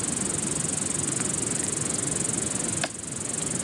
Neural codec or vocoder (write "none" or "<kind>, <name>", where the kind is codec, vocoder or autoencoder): none